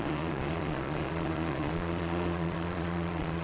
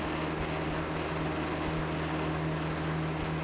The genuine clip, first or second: second